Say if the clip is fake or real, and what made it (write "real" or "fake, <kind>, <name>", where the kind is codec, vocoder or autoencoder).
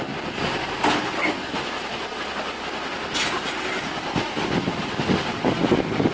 real